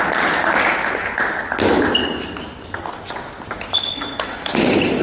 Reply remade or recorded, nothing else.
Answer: recorded